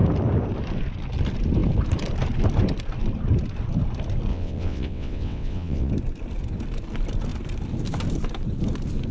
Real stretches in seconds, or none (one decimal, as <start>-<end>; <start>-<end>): 0.0-4.3; 5.9-9.1

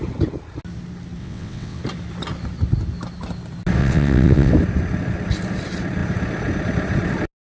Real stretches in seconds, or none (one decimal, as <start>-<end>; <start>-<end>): 0.0-1.2; 1.8-3.8; 4.5-7.5

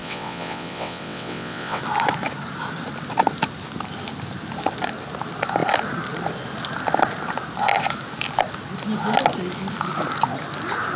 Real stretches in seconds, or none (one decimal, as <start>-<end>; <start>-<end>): 1.8-11.0

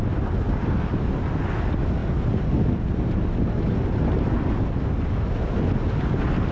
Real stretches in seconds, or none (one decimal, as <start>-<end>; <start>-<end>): 0.0-6.5

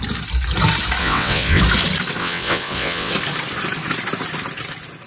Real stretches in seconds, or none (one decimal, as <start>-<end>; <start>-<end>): 0.0-1.0; 1.6-2.2; 3.1-5.1

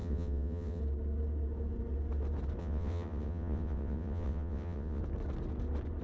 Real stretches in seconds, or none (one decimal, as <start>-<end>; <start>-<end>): 0.8-2.6; 5.0-6.0